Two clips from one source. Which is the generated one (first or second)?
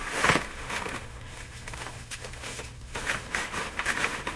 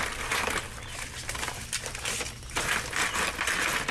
first